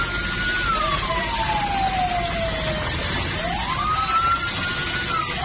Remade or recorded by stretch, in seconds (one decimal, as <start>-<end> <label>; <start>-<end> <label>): 0.0-5.4 recorded